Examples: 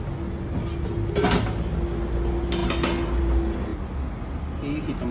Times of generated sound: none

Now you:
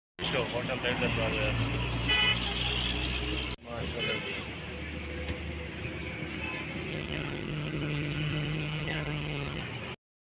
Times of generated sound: 6.9-9.6 (vocoder, HiFi-GAN)

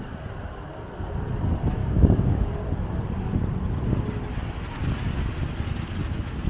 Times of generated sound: 1.8-2.5 (codec, DAC)

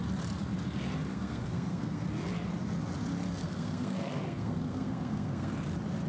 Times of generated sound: 1.1-2.0 (codec, SNAC); 3.4-5.5

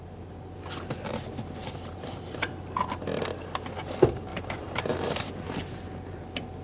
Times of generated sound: 1.6-2.6 (vocoder, BigVGAN v2); 4.3-5.3

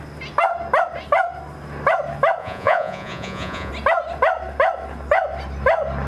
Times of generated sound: 2.4-3.7 (vocoder, Vocos)